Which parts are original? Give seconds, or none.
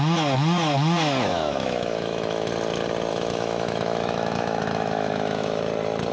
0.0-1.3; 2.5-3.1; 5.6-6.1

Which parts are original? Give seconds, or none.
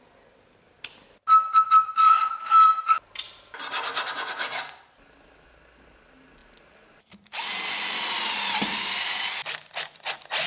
0.0-2.0; 2.8-10.5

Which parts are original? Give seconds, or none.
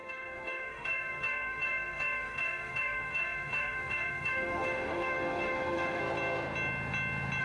6.0-7.4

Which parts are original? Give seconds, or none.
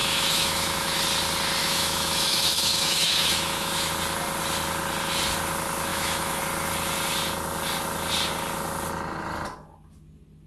1.0-1.6; 3.9-5.9; 6.4-10.5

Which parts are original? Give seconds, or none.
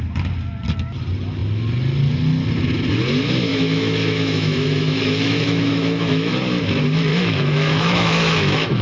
0.0-3.5; 6.3-7.1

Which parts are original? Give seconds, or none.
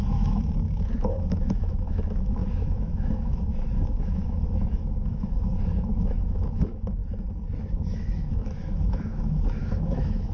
7.0-7.7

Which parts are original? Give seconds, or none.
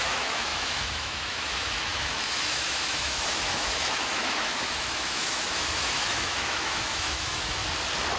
7.6-8.2